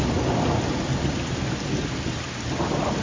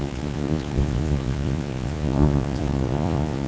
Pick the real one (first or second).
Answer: first